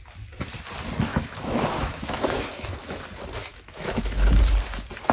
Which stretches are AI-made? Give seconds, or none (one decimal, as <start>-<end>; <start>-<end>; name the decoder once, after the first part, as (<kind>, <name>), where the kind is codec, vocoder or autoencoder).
1.1-3.0 (autoencoder, DAC-VAE); 3.5-4.4